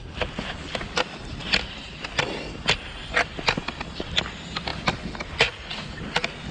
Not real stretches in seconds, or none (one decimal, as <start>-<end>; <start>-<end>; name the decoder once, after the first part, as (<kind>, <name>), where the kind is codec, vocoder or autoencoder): none